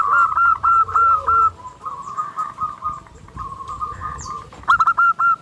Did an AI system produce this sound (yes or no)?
yes